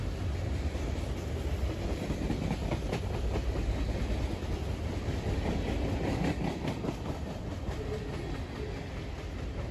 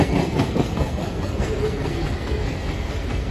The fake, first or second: second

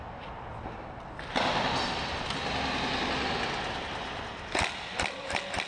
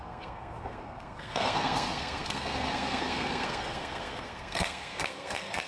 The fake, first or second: second